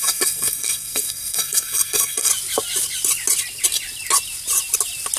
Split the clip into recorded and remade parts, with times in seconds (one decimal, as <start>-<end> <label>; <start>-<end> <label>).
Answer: 0.0-2.3 remade; 2.3-5.2 recorded